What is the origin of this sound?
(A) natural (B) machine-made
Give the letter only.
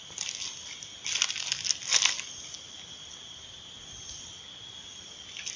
A